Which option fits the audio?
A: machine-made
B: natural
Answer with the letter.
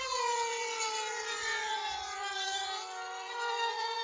A